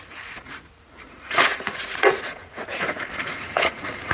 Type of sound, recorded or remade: remade